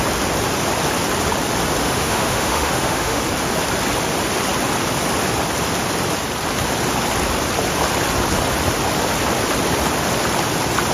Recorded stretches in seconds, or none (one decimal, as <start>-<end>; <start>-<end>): 0.0-1.8; 3.2-10.9